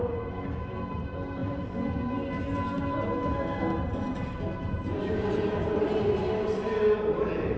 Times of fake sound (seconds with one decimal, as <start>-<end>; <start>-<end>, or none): none